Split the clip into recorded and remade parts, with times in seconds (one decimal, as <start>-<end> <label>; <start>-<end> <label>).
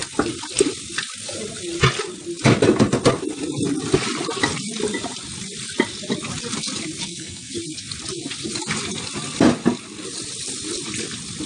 0.0-7.0 recorded; 7.0-7.5 remade; 7.5-11.5 recorded